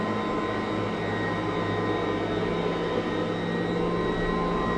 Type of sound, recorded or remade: recorded